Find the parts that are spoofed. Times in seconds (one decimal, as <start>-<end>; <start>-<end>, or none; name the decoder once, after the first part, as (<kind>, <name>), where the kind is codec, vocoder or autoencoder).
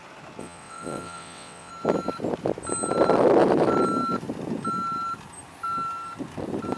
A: 0.4-1.7 (vocoder, WaveNeXt)